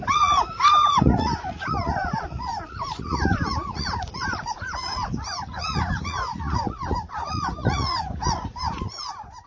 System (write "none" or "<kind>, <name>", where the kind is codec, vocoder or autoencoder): vocoder, Vocos